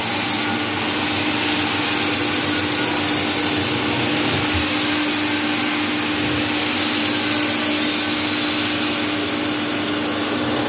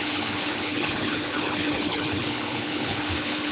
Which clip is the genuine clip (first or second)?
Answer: first